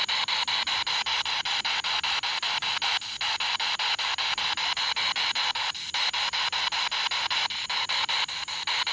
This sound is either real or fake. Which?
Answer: real